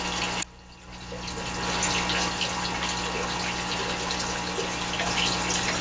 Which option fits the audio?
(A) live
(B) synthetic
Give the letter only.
A